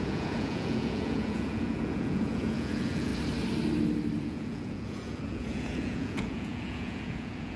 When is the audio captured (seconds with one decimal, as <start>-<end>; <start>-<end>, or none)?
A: 3.1-4.2